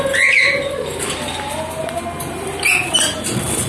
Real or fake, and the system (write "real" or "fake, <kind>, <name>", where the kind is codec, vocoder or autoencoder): real